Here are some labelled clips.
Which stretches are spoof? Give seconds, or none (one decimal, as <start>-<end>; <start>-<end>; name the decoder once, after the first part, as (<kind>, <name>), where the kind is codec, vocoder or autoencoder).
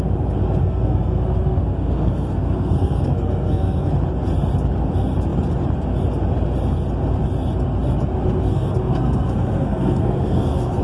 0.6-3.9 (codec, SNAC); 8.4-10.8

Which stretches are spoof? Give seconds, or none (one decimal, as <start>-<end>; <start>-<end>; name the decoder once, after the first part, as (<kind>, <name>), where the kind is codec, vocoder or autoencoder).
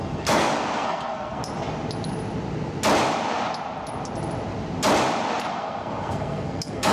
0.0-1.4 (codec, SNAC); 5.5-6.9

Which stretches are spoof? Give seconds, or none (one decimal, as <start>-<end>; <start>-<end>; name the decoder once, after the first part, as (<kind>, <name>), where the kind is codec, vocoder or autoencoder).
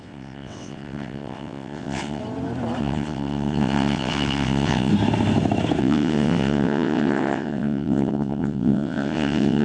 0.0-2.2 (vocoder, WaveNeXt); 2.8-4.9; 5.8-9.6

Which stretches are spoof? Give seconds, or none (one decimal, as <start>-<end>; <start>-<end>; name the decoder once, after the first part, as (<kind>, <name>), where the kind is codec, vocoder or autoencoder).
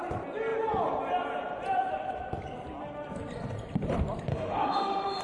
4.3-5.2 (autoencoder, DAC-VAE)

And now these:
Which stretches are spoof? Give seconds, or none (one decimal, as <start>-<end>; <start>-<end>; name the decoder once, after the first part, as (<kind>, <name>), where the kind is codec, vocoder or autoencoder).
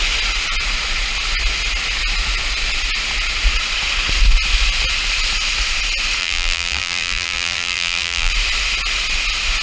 6.2-8.3 (vocoder, BigVGAN v2)